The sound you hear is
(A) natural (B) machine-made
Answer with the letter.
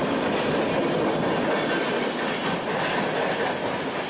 A